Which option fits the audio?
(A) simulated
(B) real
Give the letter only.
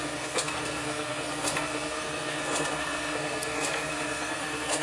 A